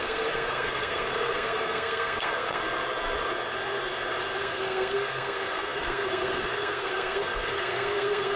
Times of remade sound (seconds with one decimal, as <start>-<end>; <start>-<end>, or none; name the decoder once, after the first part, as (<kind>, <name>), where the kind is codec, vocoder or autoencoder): 0.0-2.6 (codec, SNAC); 4.4-8.4